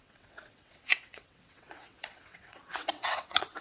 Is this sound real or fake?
fake